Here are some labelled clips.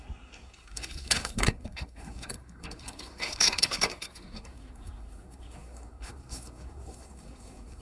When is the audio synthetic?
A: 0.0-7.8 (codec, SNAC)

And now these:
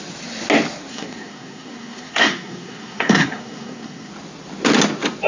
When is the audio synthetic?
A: 0.9-4.1 (codec, SNAC)

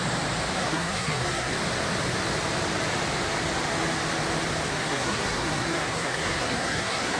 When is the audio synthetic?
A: 0.6-1.5 (codec, SNAC); 4.7-7.2